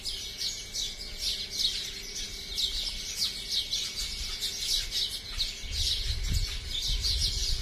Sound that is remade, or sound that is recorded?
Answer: recorded